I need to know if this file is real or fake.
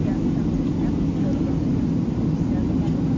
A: real